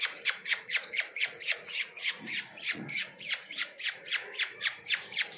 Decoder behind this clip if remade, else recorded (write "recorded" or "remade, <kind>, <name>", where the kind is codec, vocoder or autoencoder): remade, vocoder, Vocos